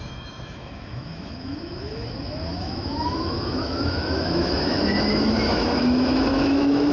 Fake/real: fake